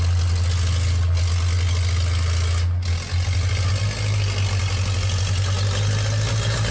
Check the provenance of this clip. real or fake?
real